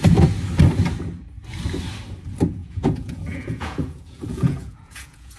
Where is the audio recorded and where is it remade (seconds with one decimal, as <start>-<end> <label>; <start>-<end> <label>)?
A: 0.0-2.6 recorded; 2.6-5.4 remade